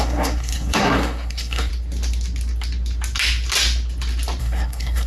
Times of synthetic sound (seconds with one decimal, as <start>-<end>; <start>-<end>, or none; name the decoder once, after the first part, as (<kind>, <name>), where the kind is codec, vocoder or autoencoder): 0.0-1.7 (codec, SNAC); 4.4-5.1